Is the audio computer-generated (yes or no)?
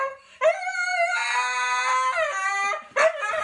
yes